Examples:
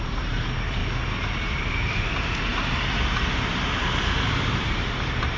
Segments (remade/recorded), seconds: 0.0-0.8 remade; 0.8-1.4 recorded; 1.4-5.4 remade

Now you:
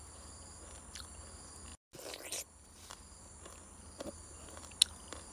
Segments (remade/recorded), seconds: 0.0-5.3 recorded

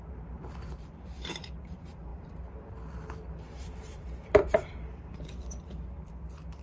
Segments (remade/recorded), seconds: 0.0-6.6 remade

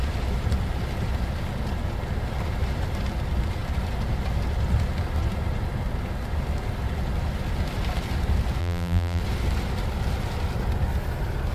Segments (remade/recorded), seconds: 0.0-8.6 recorded; 8.6-9.2 remade; 9.2-11.5 recorded

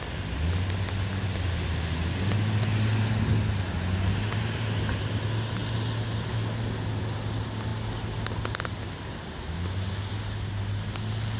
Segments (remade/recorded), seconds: 0.0-11.4 recorded